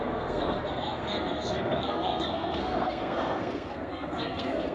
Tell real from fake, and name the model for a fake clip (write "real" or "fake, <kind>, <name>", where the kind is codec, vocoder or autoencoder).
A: fake, codec, SNAC